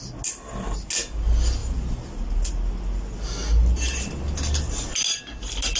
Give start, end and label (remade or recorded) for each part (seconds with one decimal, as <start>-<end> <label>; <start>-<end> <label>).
0.0-5.8 recorded